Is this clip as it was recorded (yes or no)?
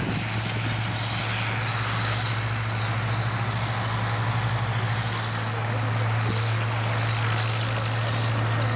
yes